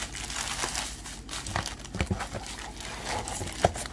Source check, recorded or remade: recorded